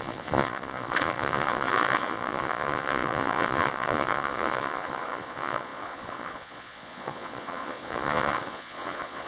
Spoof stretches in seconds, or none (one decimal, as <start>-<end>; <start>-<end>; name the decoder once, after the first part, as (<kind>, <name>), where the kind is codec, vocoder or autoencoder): 0.0-9.3 (vocoder, Vocos)